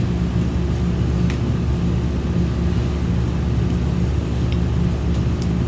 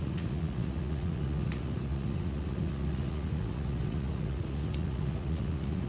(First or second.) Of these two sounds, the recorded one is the first